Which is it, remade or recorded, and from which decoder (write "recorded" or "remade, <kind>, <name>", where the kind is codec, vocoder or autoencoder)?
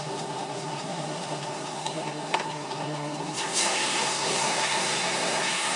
remade, codec, SNAC